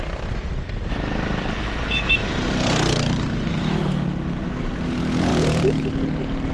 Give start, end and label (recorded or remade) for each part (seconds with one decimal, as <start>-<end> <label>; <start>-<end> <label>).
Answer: 0.0-2.2 recorded; 2.2-3.6 remade; 3.6-5.3 recorded; 5.3-5.8 remade; 5.8-6.5 recorded